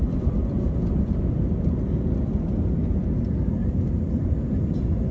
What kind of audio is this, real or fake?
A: real